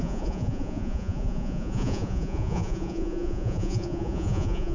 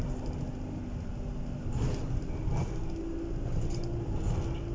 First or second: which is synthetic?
first